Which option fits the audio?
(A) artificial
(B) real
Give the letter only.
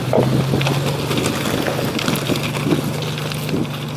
B